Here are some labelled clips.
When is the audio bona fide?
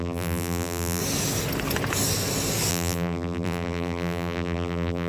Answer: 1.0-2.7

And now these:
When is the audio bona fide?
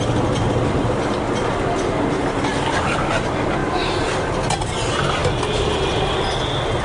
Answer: 0.0-2.5; 3.1-3.6; 4.3-6.8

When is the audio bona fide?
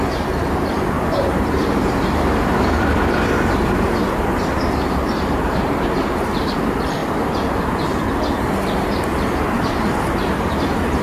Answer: 7.0-9.3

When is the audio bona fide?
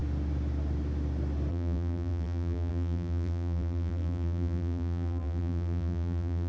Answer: 0.0-1.5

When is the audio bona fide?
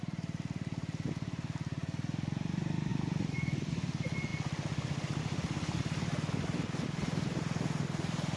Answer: 0.0-2.9; 3.7-8.4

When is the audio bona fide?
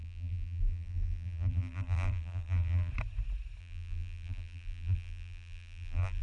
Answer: 2.9-3.6